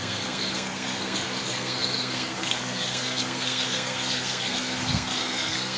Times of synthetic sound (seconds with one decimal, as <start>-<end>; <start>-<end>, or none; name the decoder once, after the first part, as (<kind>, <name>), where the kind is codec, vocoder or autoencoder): 0.0-5.8 (codec, SNAC)